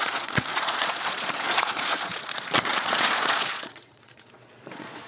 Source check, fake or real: fake